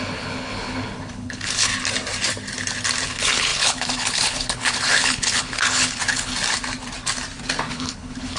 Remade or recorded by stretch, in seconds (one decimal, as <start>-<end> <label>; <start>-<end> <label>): 0.0-1.7 remade; 1.7-3.1 recorded; 3.1-6.3 remade; 6.3-7.7 recorded; 7.7-8.4 remade